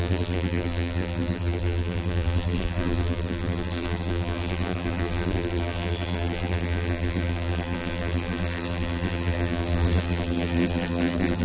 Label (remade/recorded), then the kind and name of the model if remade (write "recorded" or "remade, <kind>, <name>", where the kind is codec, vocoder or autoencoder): remade, vocoder, BigVGAN v2